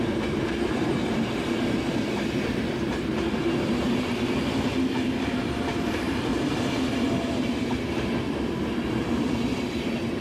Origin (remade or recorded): remade